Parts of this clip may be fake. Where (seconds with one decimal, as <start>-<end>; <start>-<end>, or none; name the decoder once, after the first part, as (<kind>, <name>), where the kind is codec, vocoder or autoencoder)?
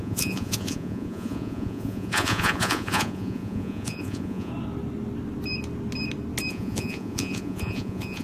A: 0.0-4.5 (vocoder, Vocos); 6.5-8.2